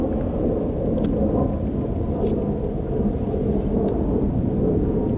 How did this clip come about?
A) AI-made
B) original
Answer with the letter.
B